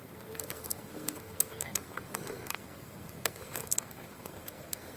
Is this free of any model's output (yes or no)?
no